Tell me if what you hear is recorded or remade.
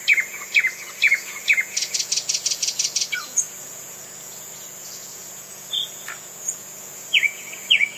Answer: remade